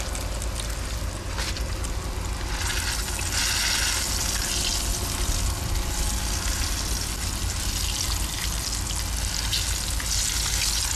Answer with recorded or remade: recorded